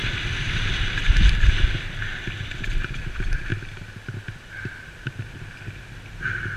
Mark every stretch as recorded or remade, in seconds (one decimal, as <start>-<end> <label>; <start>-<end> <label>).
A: 0.0-0.8 remade; 0.8-6.6 recorded